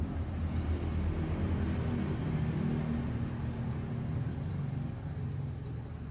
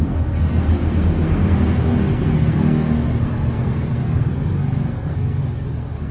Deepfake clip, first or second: second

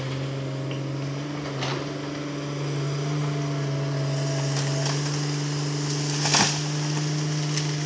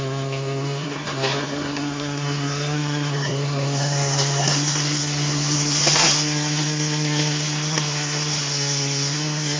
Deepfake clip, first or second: second